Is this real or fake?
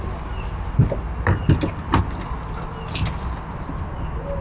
real